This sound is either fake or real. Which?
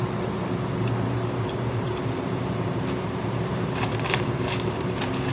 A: fake